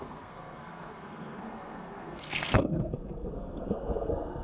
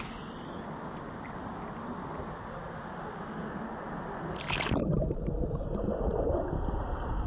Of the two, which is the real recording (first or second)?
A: second